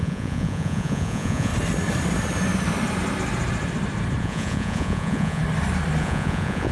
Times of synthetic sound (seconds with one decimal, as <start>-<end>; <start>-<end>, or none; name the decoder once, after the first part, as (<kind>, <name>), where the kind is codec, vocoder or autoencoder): 0.0-1.5 (vocoder, Vocos); 4.2-5.4; 6.0-6.7